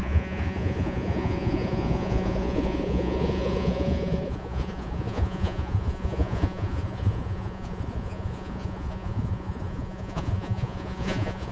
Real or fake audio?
fake